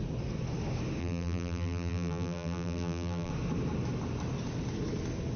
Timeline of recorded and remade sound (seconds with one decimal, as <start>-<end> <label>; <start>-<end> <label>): 0.0-1.0 recorded; 1.0-3.3 remade; 3.3-5.4 recorded